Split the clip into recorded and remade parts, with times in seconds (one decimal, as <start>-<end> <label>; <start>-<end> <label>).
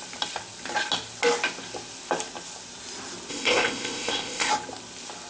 0.0-3.3 recorded; 3.3-4.5 remade; 4.5-5.3 recorded